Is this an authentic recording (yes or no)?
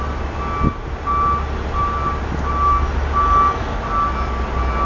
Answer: yes